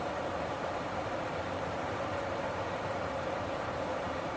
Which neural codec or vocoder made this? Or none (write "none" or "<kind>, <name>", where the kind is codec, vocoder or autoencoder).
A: vocoder, BigVGAN v2